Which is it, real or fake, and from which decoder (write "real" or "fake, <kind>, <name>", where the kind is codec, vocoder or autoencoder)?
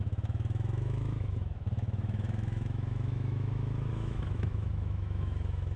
fake, autoencoder, DAC-VAE